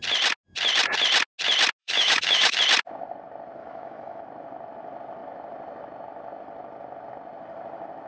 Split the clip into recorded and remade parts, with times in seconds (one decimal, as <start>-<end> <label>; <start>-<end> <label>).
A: 0.0-1.8 recorded; 1.8-2.6 remade; 2.6-3.6 recorded; 3.6-4.2 remade; 4.2-8.1 recorded

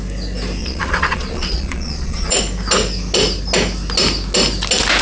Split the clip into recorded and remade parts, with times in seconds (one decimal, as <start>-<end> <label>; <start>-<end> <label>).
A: 0.0-0.6 recorded; 0.6-2.4 remade; 2.4-5.0 recorded

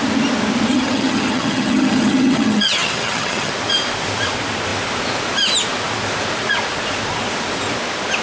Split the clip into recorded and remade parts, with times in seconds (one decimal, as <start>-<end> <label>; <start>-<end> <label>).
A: 0.0-0.7 recorded; 0.7-3.5 remade; 3.5-8.2 recorded